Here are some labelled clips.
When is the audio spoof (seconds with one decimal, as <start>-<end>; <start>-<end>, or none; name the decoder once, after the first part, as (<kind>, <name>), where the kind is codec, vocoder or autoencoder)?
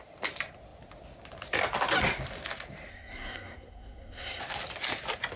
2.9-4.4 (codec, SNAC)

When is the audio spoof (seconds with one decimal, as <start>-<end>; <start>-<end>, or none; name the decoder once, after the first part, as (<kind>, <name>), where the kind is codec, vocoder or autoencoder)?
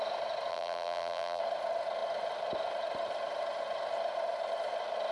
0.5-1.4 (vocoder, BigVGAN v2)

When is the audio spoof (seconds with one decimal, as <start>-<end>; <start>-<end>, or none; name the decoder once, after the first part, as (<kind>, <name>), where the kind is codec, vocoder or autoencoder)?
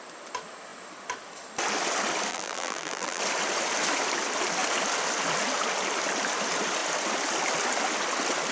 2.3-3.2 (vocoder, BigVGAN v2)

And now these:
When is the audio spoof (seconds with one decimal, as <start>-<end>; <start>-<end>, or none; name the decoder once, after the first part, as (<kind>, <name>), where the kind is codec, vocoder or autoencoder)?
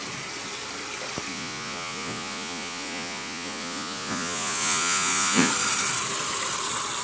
1.3-5.5 (vocoder, Vocos)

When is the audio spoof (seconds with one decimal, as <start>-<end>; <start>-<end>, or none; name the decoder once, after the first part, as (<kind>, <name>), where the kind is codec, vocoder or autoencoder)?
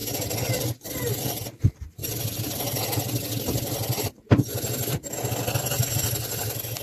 0.8-2.0 (vocoder, BigVGAN v2); 4.9-6.8